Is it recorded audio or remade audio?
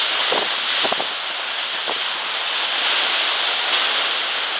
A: recorded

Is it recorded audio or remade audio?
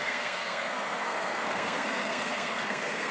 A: remade